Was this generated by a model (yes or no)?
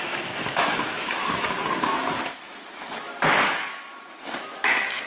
yes